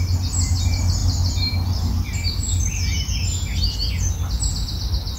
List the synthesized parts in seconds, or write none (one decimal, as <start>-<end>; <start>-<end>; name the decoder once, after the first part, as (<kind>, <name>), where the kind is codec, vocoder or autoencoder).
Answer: none